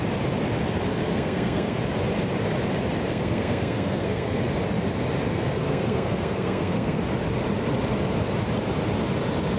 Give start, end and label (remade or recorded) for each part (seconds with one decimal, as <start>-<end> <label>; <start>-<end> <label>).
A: 0.0-0.9 recorded; 0.9-1.8 remade; 1.8-3.1 recorded; 3.1-4.4 remade; 4.4-5.3 recorded; 5.3-7.0 remade; 7.0-9.6 recorded